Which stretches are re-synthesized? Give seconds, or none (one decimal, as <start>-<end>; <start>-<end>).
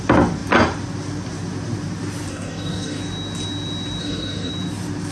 2.3-3.0; 4.0-4.5